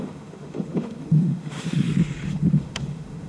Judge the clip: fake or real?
fake